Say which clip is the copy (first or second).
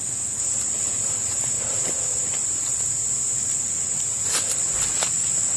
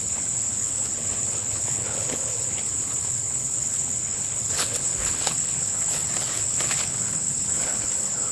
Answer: second